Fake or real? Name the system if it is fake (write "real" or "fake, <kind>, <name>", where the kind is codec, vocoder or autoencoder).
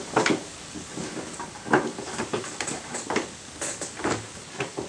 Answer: fake, codec, DAC